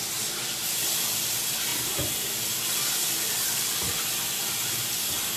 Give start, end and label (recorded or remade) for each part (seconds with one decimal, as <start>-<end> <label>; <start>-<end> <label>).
0.0-5.4 recorded